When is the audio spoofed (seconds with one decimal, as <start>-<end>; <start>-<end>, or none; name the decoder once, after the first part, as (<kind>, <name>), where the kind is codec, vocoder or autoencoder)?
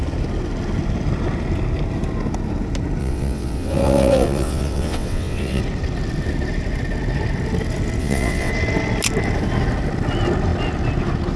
3.0-5.6 (vocoder, WaveNeXt); 8.0-8.5